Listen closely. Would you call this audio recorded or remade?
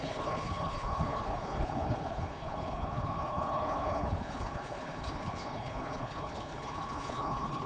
remade